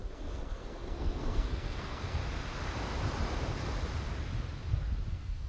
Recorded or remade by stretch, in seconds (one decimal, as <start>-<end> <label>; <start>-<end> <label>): 0.0-2.2 remade; 2.2-5.1 recorded; 5.1-5.5 remade